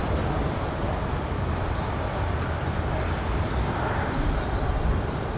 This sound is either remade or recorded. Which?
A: recorded